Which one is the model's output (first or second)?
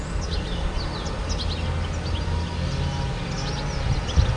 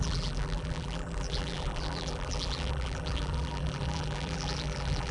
second